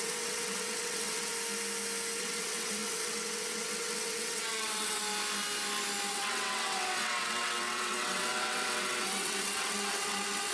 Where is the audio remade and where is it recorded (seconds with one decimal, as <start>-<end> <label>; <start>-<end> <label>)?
0.0-1.3 remade; 1.3-2.2 recorded; 2.2-5.0 remade; 5.0-6.1 recorded; 6.1-10.5 remade